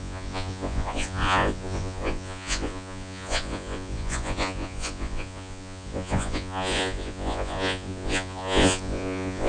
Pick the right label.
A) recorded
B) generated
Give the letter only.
B